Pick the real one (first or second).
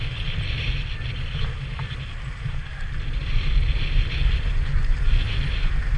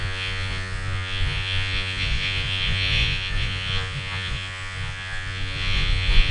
first